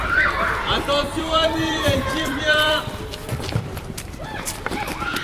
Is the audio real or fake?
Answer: fake